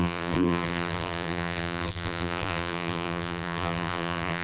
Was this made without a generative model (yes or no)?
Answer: no